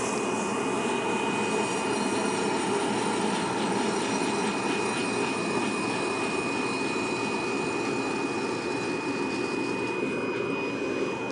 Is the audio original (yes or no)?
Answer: yes